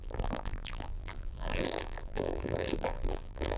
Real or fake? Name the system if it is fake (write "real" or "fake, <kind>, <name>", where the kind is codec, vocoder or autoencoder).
fake, vocoder, BigVGAN v2